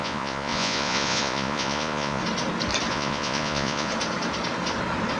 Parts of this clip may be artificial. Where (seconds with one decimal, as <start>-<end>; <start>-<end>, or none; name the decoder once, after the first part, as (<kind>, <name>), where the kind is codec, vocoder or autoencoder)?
0.0-2.2 (vocoder, Vocos); 2.9-3.9